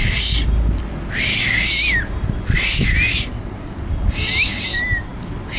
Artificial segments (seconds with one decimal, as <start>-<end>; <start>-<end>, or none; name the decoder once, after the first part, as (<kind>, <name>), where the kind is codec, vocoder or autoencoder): none